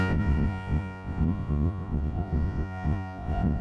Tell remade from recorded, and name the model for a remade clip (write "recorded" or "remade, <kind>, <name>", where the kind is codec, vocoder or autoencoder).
remade, vocoder, Vocos